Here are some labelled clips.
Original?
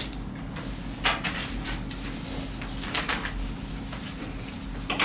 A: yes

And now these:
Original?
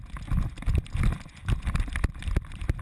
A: yes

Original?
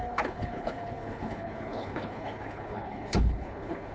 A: no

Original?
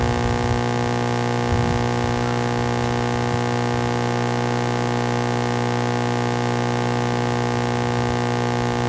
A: yes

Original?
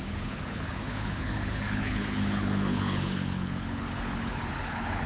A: no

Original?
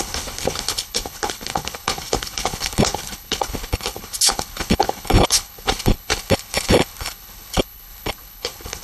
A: no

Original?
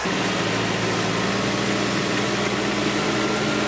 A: yes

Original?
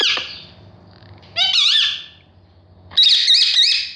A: yes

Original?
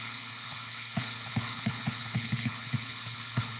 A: no